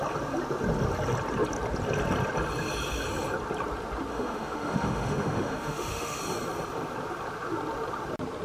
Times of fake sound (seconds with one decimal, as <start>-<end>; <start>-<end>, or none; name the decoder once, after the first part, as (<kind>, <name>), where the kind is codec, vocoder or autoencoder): 4.1-6.2 (autoencoder, DAC-VAE)